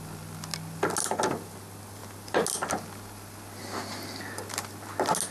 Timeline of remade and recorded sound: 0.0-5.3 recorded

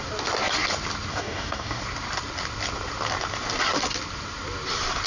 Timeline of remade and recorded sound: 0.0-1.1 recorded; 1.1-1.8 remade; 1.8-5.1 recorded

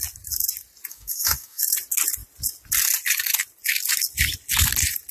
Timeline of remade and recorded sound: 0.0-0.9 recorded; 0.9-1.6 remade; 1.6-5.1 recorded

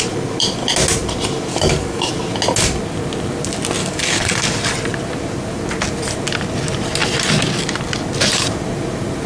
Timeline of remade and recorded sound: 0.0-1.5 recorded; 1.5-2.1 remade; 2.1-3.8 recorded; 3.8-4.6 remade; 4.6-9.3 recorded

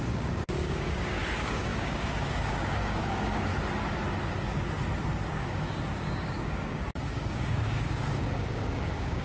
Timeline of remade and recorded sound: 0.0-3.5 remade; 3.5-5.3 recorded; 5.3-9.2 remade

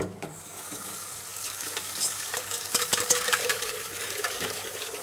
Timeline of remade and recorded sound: 0.0-5.0 remade

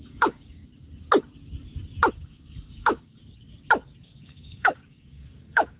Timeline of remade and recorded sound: 0.0-0.6 remade; 0.6-2.1 recorded; 2.1-3.2 remade; 3.2-4.0 recorded; 4.0-5.8 remade